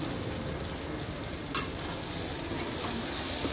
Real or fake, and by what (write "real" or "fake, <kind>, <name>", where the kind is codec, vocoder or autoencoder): real